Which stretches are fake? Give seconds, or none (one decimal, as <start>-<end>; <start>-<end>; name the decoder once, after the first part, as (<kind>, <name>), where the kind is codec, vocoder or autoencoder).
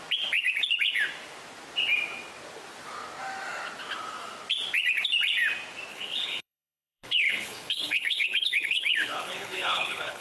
5.9-10.2 (codec, HILCodec)